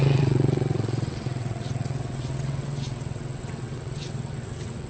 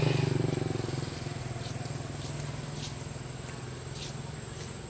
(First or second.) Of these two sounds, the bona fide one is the second